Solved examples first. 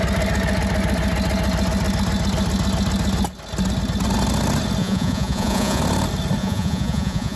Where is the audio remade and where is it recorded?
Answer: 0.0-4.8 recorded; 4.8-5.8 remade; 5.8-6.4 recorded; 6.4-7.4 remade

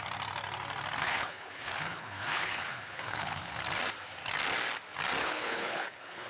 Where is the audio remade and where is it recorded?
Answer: 0.0-1.0 recorded; 1.0-3.6 remade; 3.6-5.2 recorded; 5.2-6.3 remade

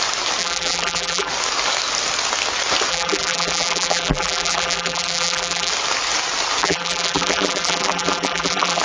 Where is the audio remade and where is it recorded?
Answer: 0.0-0.4 recorded; 0.4-1.3 remade; 1.3-2.9 recorded; 2.9-5.7 remade; 5.7-6.6 recorded; 6.6-8.8 remade

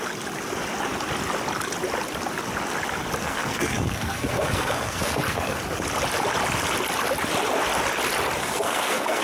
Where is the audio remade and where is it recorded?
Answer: 0.0-3.2 recorded; 3.2-5.6 remade; 5.6-8.4 recorded; 8.4-9.2 remade

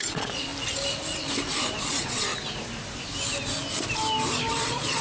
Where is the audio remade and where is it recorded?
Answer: 0.0-0.5 remade; 0.5-1.8 recorded; 1.8-2.3 remade; 2.3-4.6 recorded; 4.6-5.0 remade

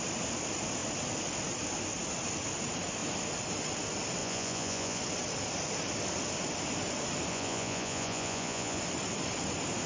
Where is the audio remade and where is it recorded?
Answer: 0.0-4.2 recorded; 4.2-5.0 remade; 5.0-7.3 recorded; 7.3-8.8 remade; 8.8-9.9 recorded

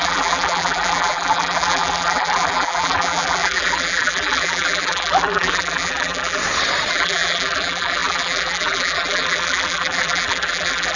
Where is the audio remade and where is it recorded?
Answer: 0.0-6.4 remade; 6.4-6.9 recorded; 6.9-11.0 remade